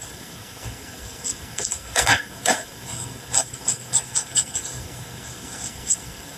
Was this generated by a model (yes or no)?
yes